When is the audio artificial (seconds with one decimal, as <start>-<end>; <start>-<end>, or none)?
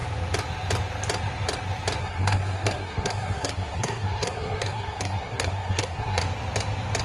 2.0-6.2